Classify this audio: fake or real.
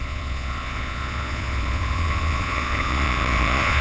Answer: fake